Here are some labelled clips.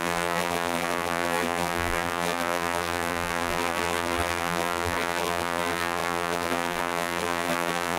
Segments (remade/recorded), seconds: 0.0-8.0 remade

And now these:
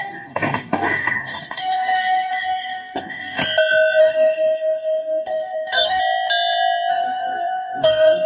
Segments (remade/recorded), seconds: 0.0-3.4 remade; 3.4-4.0 recorded; 4.0-6.0 remade; 6.0-6.9 recorded; 6.9-8.3 remade

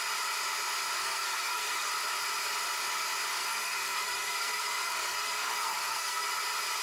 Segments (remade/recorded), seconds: 0.0-1.0 recorded; 1.0-1.9 remade; 1.9-3.3 recorded; 3.3-6.3 remade; 6.3-6.8 recorded

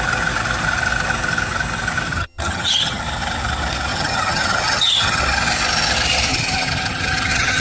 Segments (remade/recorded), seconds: 0.0-2.1 recorded; 2.1-3.0 remade; 3.0-3.9 recorded; 3.9-5.2 remade; 5.2-6.3 recorded; 6.3-7.6 remade

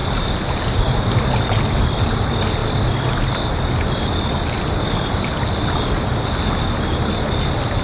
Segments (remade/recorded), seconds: 0.0-0.6 remade; 0.6-7.8 recorded

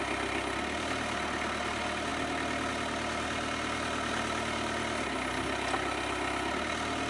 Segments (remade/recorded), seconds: 0.0-7.1 recorded

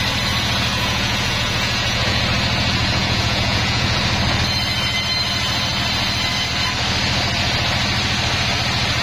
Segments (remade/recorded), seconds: 0.0-0.7 recorded; 0.7-2.2 remade; 2.2-2.8 recorded; 2.8-4.0 remade; 4.0-9.0 recorded

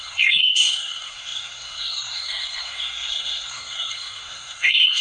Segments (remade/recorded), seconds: 0.0-5.0 remade